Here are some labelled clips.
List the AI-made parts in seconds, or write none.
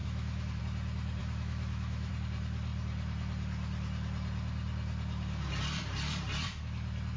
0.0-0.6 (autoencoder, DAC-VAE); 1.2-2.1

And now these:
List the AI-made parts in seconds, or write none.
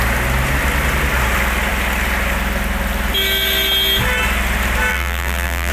4.9-5.7 (vocoder, BigVGAN v2)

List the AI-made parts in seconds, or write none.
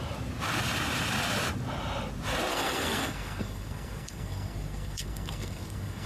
2.5-6.1 (codec, SNAC)